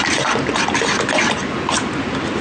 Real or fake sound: real